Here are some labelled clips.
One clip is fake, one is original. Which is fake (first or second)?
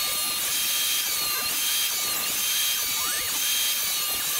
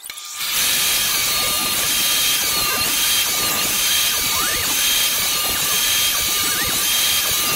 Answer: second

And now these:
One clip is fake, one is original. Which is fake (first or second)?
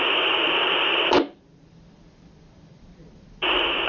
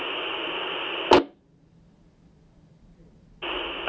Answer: first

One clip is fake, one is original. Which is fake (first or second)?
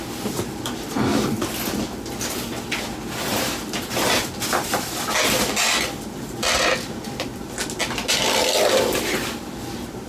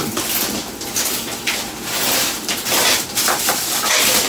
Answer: second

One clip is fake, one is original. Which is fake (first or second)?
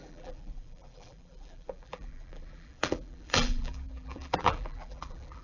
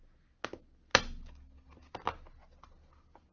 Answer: first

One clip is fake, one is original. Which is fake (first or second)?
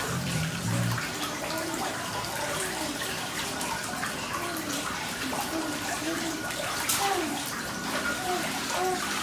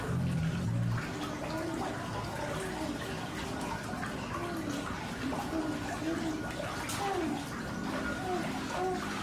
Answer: first